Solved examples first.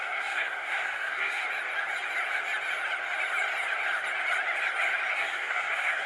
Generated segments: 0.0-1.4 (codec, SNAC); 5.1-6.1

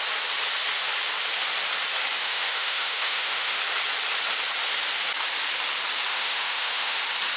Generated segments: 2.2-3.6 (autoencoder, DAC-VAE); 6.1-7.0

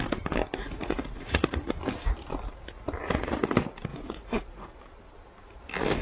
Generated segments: 0.6-1.8 (vocoder, Vocos); 3.0-3.5; 3.9-4.7

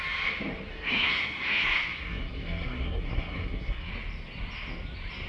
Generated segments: 0.7-3.9 (codec, SNAC)

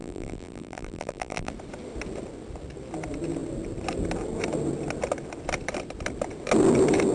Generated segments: 0.0-1.5 (vocoder, BigVGAN v2)

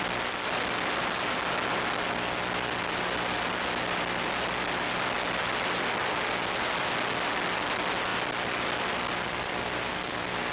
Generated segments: none

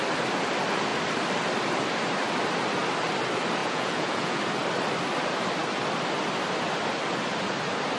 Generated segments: 3.6-4.4 (vocoder, Vocos)